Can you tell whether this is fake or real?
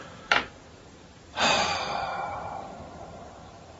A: fake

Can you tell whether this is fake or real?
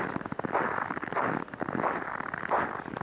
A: real